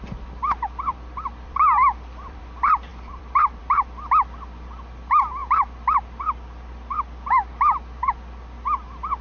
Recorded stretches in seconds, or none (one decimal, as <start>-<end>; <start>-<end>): 0.0-0.9; 2.4-2.9; 3.6-9.2